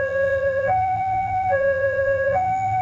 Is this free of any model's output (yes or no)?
no